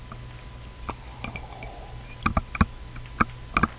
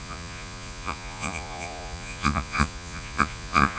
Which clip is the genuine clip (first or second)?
first